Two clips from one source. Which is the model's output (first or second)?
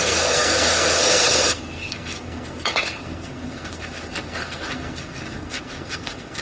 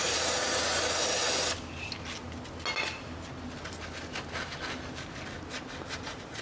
first